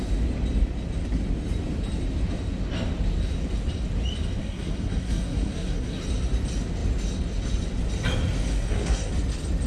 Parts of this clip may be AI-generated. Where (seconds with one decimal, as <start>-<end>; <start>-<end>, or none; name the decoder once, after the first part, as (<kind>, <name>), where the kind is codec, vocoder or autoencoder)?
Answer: 4.4-6.0 (codec, SNAC); 8.5-9.1